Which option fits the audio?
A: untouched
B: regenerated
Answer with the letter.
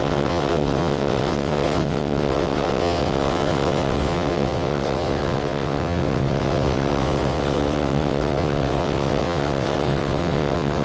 B